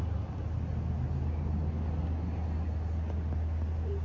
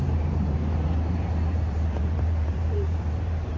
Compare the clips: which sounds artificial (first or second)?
second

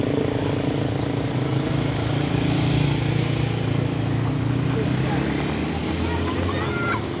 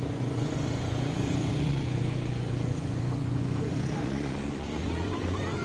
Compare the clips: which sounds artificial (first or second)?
second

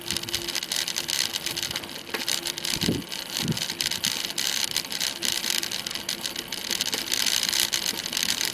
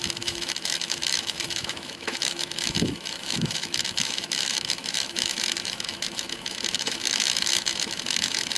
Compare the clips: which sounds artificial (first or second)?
second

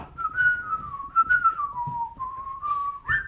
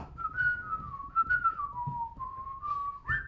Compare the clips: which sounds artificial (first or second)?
first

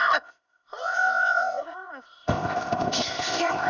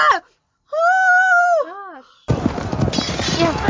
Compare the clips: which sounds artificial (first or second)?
first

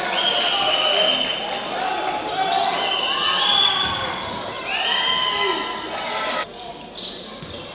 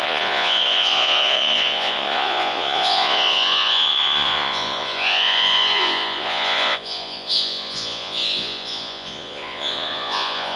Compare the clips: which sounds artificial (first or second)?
second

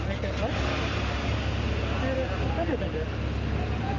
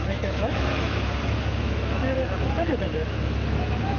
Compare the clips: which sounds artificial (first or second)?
second